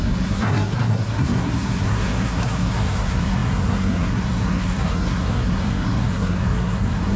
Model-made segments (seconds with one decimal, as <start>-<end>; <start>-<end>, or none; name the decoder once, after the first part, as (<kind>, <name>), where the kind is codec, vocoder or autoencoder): 0.0-7.2 (codec, SNAC)